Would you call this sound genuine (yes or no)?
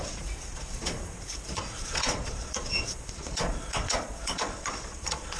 no